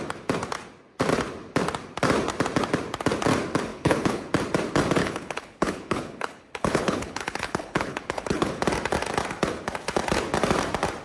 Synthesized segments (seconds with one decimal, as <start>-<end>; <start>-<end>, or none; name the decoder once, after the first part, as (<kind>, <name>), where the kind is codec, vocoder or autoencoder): 3.7-4.3 (codec, HILCodec); 5.0-8.6